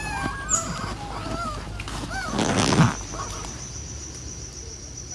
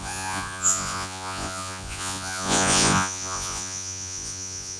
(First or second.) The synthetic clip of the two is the second